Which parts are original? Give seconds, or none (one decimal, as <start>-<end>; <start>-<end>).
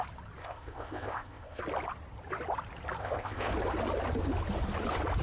0.0-0.4; 1.6-3.0; 3.5-5.2